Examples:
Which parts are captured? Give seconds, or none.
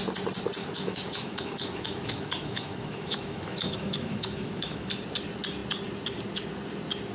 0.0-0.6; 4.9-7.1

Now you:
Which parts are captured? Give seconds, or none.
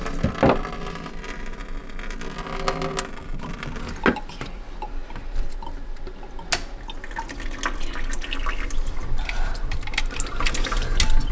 0.0-11.3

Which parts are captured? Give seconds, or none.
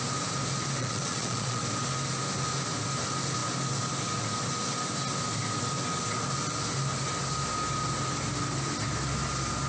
0.0-0.8; 1.6-9.7